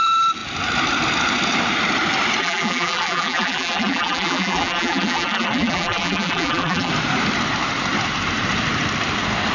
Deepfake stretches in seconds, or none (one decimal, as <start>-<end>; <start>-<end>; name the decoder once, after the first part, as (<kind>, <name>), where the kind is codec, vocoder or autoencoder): 2.4-6.9 (vocoder, BigVGAN v2)